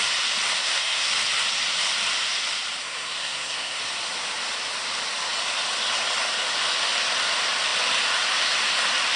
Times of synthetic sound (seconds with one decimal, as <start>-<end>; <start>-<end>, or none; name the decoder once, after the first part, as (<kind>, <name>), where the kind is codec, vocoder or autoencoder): 0.6-1.1 (codec, SNAC); 2.8-3.8